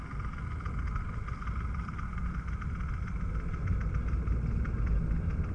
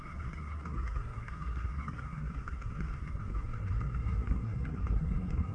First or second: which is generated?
second